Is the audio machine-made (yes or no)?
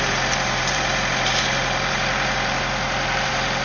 yes